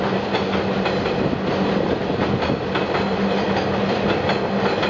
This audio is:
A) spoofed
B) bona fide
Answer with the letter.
B